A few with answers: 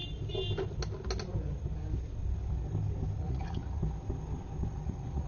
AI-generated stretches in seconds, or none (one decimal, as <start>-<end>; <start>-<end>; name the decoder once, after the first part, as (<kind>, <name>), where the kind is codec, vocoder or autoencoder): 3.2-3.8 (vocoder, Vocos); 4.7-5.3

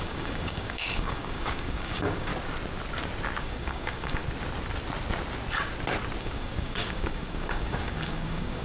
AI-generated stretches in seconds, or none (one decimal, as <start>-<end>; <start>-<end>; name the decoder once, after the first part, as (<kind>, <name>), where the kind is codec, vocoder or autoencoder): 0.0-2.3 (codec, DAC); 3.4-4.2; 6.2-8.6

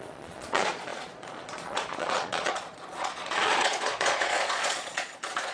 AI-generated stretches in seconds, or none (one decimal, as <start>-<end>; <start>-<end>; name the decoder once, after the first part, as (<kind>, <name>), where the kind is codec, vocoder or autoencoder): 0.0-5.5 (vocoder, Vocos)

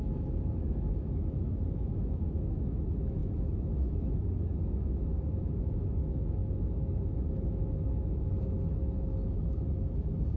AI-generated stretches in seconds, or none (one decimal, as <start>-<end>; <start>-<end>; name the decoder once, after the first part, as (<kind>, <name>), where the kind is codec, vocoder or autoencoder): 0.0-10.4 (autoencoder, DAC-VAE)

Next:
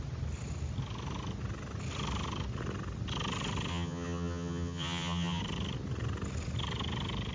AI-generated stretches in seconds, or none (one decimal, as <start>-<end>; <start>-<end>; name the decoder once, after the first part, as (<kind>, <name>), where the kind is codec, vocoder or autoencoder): 3.7-5.4 (vocoder, HiFi-GAN)